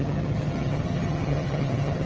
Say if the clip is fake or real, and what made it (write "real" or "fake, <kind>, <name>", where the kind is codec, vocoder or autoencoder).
fake, vocoder, HiFi-GAN